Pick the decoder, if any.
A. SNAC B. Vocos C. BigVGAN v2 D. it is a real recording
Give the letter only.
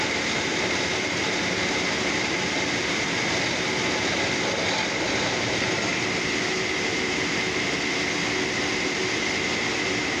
D